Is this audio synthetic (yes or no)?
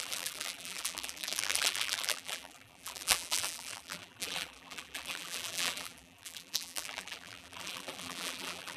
yes